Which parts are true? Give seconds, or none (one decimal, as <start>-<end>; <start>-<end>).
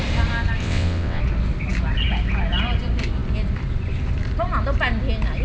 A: 0.0-0.6; 1.2-5.4